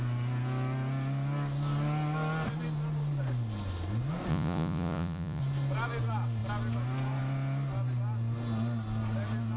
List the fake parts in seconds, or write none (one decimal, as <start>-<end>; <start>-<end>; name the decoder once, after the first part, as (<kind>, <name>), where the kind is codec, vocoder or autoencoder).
4.3-5.4 (vocoder, Vocos)